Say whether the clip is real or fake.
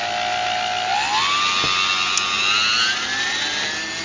real